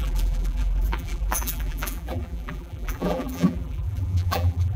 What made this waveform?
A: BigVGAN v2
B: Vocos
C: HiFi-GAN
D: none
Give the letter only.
A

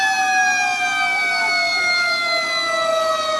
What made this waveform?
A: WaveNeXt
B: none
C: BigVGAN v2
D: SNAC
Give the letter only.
B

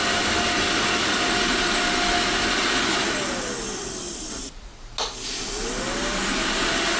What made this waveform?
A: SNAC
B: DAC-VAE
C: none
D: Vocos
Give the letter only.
C